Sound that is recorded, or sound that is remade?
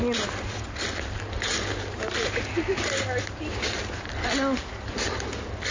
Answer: recorded